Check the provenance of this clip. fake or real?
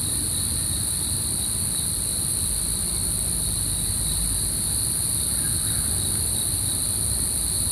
real